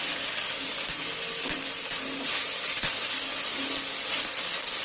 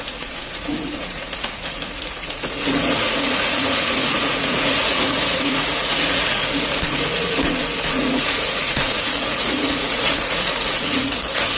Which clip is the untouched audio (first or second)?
first